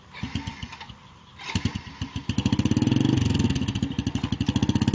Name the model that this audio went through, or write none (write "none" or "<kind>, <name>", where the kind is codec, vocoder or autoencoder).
none